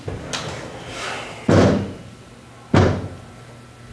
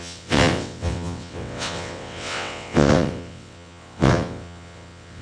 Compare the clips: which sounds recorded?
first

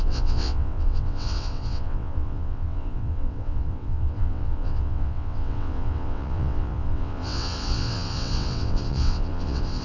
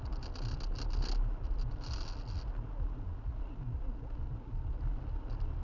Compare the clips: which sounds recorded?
second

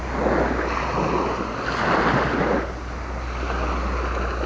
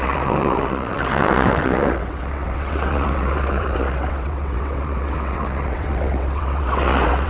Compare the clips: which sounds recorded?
first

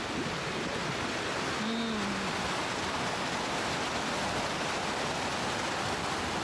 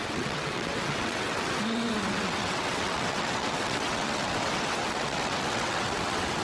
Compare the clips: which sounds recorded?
first